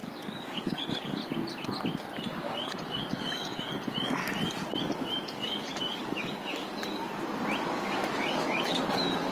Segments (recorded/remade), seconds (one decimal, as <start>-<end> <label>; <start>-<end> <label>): 0.0-1.2 remade; 1.2-2.4 recorded; 2.4-4.2 remade; 4.2-4.8 recorded; 4.8-7.1 remade; 7.1-7.6 recorded; 7.6-9.3 remade